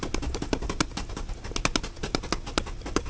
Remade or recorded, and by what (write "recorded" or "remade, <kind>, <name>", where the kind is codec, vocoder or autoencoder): recorded